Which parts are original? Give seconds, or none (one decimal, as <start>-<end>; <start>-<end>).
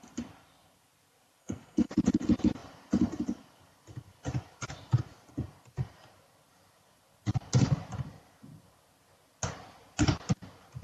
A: 0.0-1.4; 1.9-10.8